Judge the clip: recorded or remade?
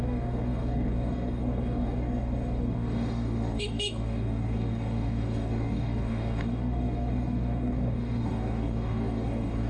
remade